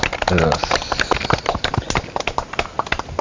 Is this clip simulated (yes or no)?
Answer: no